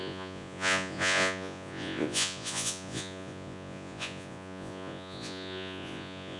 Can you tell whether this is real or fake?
fake